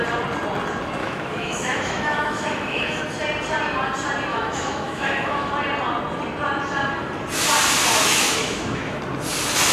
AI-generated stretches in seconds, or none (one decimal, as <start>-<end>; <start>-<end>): 1.0-3.0; 4.3-5.5; 8.0-9.0